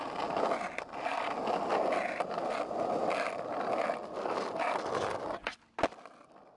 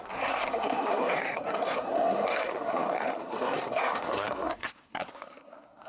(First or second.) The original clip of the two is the first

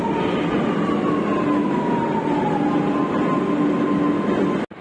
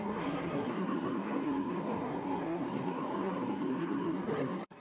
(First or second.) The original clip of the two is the first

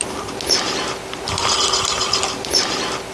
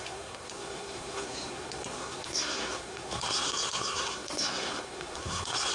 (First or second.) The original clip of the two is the first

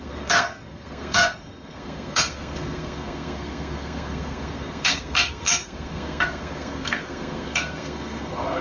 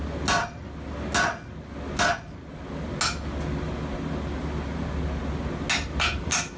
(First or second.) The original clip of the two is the second